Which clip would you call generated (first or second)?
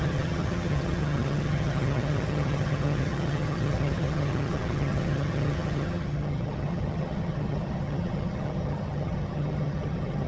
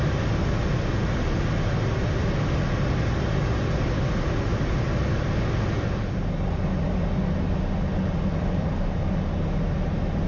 first